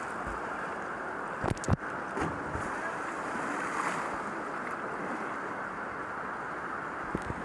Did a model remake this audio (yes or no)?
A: no